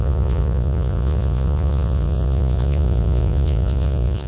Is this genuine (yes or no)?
no